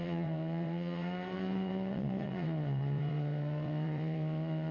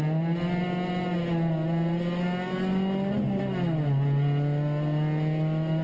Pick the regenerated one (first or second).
first